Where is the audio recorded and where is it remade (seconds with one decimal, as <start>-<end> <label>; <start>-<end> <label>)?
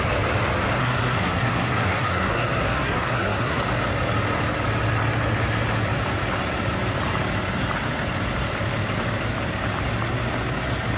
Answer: 0.0-0.8 recorded; 0.8-3.6 remade; 3.6-11.0 recorded